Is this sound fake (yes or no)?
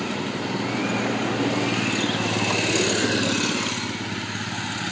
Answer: no